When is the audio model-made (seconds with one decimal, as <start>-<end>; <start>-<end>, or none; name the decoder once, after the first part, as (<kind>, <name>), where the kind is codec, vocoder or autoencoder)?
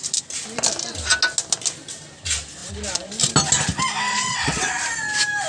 4.1-4.7 (vocoder, WaveNeXt)